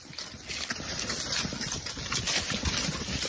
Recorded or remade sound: recorded